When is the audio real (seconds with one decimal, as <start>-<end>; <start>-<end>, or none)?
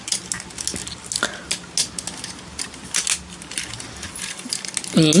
0.0-5.2